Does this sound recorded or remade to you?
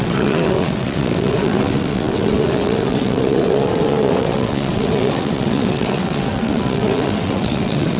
remade